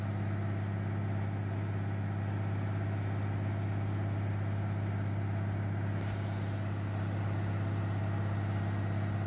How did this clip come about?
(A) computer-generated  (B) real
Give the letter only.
B